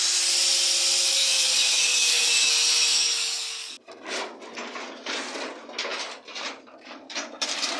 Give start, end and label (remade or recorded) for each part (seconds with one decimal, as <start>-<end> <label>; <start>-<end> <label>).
0.0-1.1 recorded; 1.1-2.5 remade; 2.5-2.9 recorded; 2.9-3.7 remade; 3.7-7.8 recorded